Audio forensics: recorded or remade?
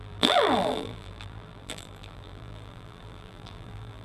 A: remade